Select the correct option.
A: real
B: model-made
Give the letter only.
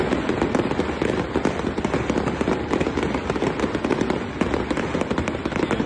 A